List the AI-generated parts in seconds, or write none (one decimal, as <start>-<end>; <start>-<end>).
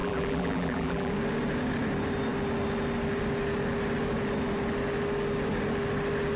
0.0-1.1